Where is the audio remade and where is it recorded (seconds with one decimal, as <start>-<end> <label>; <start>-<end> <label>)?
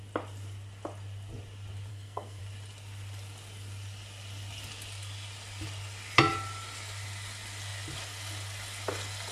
0.0-1.9 recorded; 1.9-2.4 remade; 2.4-9.3 recorded